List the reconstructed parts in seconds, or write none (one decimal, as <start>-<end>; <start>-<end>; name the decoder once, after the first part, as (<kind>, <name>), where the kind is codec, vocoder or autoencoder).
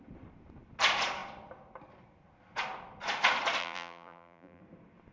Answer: 3.6-4.6 (vocoder, BigVGAN v2)